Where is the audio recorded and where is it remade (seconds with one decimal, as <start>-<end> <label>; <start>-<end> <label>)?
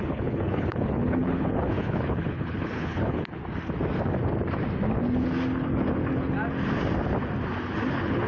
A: 0.0-3.4 remade; 3.4-7.9 recorded; 7.9-8.3 remade